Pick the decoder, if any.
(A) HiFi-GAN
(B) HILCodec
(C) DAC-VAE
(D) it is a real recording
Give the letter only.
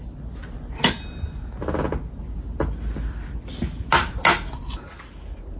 D